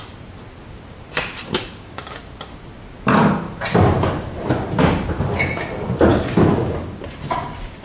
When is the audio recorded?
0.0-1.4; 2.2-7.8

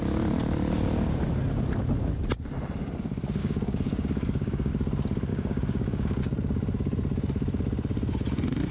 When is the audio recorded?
0.0-3.4; 4.7-5.3; 6.2-8.7

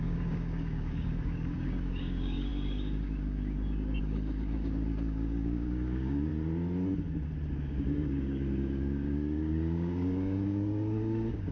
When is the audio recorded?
6.3-7.5

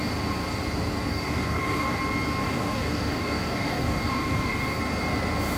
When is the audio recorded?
0.0-1.1; 2.0-2.4; 4.8-5.6